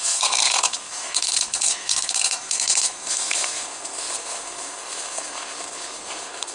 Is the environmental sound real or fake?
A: fake